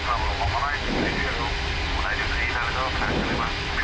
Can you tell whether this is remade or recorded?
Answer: recorded